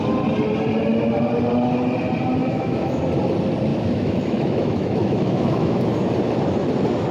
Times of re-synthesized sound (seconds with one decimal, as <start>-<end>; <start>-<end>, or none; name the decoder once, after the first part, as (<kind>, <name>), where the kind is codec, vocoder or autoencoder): 2.4-3.0 (autoencoder, DAC-VAE); 3.7-5.8